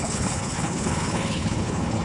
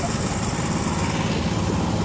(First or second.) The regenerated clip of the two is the first